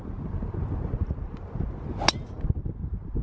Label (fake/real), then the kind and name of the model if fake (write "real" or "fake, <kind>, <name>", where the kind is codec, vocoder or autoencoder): real